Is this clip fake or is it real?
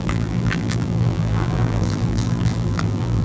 fake